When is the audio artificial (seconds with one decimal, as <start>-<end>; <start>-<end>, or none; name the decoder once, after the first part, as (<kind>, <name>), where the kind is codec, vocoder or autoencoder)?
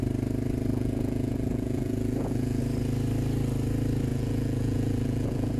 0.7-2.6 (vocoder, Vocos); 4.1-5.6